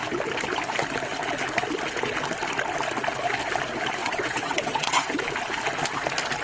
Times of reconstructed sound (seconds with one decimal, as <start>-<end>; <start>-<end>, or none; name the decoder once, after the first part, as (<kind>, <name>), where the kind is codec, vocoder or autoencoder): 4.0-5.2 (vocoder, WaveNeXt)